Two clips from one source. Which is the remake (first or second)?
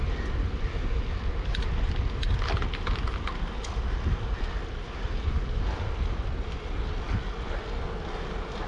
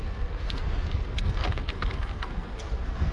second